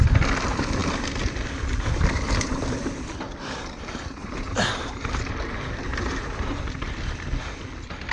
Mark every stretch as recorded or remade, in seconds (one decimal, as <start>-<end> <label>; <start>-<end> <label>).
0.0-4.2 recorded; 4.2-4.9 remade; 4.9-5.9 recorded; 5.9-6.6 remade; 6.6-8.1 recorded